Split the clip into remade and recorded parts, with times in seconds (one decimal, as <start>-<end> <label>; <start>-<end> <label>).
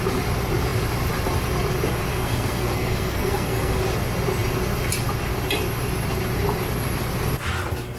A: 0.0-2.1 recorded; 2.1-3.8 remade; 3.8-8.0 recorded